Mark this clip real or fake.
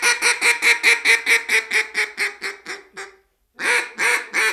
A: real